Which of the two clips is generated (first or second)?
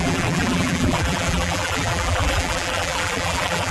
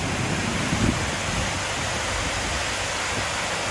first